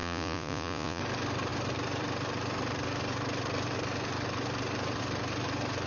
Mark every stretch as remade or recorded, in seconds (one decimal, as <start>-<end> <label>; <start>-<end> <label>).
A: 0.0-1.0 remade; 1.0-5.9 recorded